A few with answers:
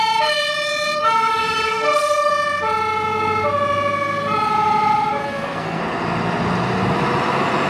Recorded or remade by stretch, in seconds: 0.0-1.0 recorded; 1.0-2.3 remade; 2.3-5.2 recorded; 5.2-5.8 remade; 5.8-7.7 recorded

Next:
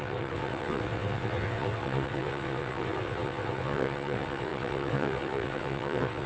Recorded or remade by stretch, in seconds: 0.0-6.3 remade

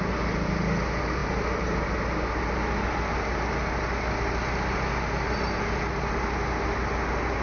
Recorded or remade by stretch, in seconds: 0.0-7.4 recorded

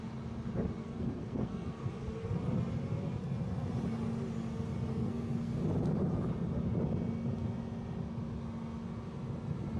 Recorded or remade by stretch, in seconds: 0.0-0.8 recorded; 0.8-1.9 remade; 1.9-4.9 recorded; 4.9-5.6 remade; 5.6-9.8 recorded

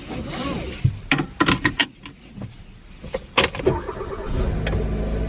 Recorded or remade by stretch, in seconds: 0.0-5.3 recorded

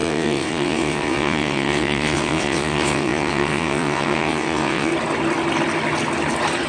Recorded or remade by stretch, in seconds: 0.0-4.9 remade; 4.9-6.7 recorded

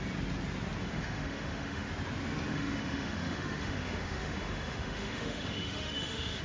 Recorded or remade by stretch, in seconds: 0.0-0.8 recorded; 0.8-1.9 remade; 1.9-2.5 recorded; 2.5-6.4 remade

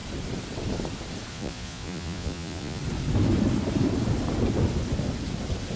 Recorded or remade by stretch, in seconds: 0.0-1.3 recorded; 1.3-2.8 remade; 2.8-5.8 recorded